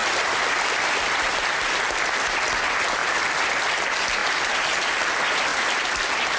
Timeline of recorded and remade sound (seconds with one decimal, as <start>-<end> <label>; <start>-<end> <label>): 0.0-1.5 remade; 1.5-3.0 recorded; 3.0-3.6 remade; 3.6-4.2 recorded; 4.2-4.8 remade; 4.8-5.5 recorded; 5.5-6.4 remade